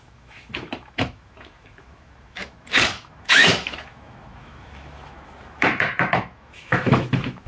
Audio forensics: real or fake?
fake